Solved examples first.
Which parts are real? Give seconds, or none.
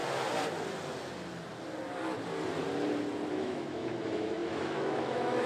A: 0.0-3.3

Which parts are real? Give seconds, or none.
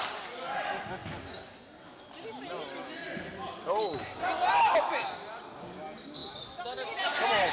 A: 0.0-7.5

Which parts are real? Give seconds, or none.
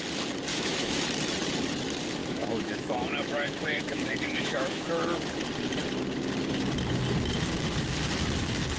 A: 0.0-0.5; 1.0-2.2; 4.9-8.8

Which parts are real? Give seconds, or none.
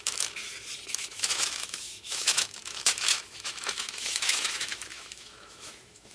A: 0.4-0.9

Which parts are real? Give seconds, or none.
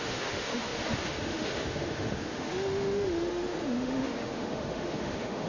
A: none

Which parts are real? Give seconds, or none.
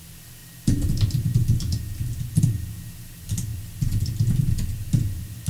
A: 0.0-5.5